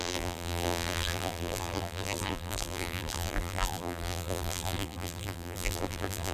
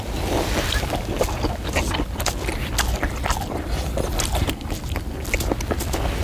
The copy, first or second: first